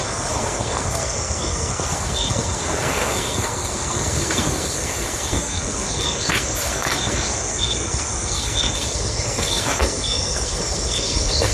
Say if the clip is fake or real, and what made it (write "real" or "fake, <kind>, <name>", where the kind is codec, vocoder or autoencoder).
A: fake, codec, SNAC